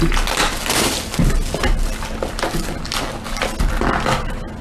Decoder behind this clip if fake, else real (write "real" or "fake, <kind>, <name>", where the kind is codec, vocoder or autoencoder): real